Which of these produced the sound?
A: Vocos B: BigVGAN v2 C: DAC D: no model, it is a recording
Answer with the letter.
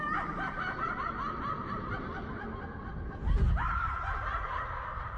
D